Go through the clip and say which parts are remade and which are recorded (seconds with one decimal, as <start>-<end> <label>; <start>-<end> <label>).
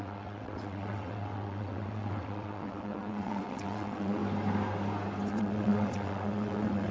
0.0-4.2 remade; 4.2-5.3 recorded; 5.3-6.9 remade